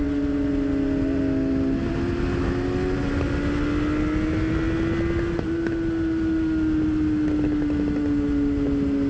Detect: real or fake real